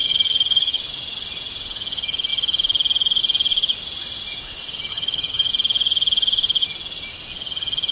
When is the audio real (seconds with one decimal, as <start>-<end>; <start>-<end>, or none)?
0.8-4.9; 5.5-7.9